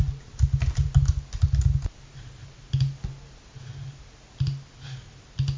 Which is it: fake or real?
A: real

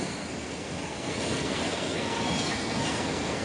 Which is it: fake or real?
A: fake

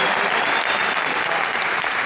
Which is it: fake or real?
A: fake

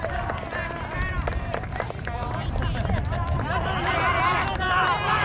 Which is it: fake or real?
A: real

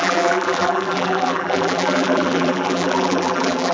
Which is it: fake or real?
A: fake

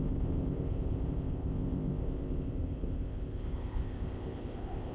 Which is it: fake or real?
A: fake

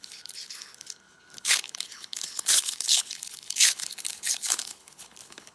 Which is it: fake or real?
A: fake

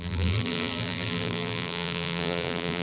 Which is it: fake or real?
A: fake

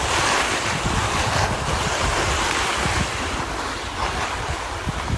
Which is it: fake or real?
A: real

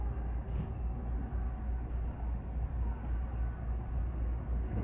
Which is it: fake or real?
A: real